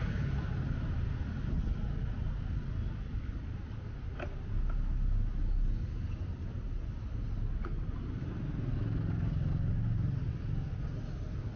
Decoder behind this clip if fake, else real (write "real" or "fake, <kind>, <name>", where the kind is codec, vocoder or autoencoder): real